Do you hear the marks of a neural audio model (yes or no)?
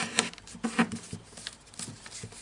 yes